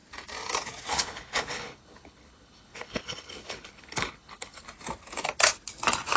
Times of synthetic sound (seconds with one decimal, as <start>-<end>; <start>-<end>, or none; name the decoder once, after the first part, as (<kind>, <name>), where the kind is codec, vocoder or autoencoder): 0.9-4.6 (codec, HILCodec)